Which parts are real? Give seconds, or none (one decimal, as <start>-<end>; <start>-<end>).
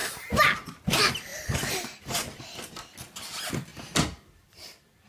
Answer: 0.0-3.7